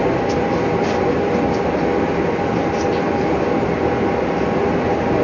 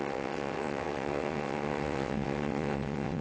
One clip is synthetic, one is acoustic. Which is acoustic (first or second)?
first